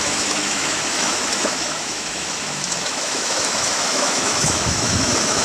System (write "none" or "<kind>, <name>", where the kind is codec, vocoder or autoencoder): autoencoder, DAC-VAE